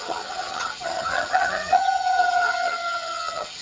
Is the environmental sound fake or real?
fake